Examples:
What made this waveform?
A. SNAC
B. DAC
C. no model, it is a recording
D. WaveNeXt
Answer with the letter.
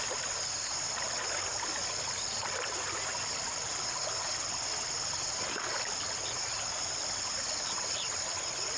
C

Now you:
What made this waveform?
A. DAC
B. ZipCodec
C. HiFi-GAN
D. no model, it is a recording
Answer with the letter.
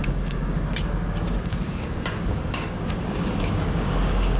A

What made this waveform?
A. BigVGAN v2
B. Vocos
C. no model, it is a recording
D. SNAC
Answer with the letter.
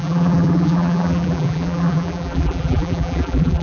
A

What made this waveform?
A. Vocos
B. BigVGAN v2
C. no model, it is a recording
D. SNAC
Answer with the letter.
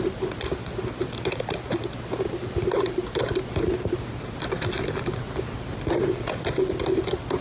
C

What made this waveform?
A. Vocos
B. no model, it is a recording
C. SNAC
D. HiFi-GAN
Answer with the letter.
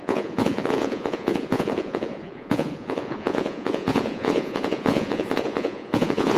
A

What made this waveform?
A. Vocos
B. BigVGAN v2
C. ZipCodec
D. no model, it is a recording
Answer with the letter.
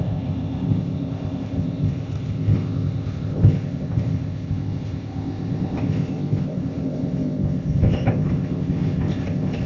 C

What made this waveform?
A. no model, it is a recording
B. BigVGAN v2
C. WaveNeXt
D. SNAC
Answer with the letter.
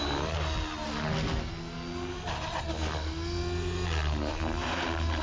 A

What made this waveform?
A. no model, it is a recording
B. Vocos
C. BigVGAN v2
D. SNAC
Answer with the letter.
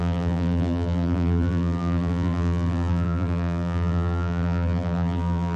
C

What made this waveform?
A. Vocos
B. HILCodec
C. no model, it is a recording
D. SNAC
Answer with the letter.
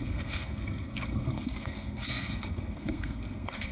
D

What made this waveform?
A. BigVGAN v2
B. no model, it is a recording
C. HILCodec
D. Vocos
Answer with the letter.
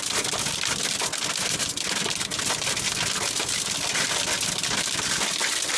B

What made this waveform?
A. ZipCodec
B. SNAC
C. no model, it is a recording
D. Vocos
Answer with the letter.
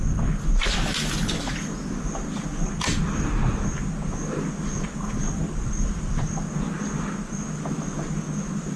C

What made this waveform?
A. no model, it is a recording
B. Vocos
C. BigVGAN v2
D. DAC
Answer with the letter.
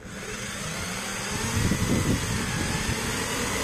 A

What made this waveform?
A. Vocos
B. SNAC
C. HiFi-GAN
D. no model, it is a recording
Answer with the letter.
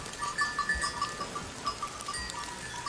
D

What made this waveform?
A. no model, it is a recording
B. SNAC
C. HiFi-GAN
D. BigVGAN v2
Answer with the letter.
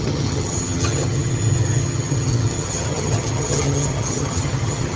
C